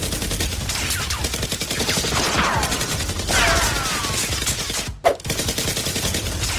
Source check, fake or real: real